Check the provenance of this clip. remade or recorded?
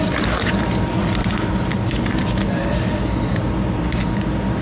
recorded